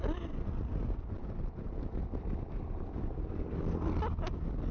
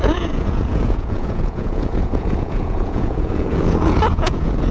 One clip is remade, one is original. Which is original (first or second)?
first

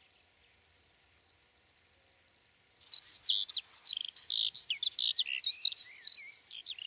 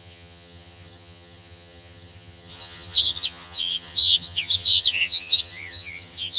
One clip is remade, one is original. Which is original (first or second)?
first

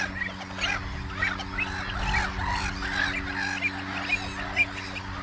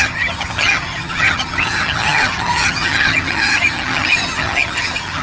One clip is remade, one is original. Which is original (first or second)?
first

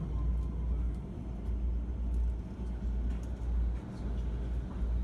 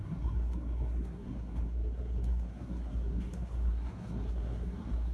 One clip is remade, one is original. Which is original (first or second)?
first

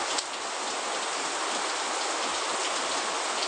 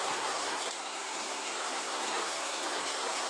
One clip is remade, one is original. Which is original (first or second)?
first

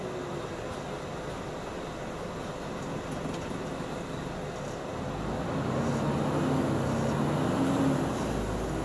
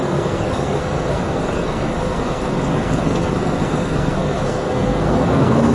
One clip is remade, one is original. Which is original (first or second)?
first